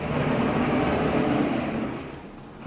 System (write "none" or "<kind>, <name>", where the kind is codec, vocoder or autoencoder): none